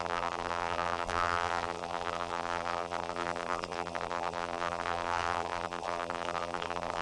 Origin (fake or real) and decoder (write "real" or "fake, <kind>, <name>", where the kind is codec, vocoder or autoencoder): fake, vocoder, BigVGAN v2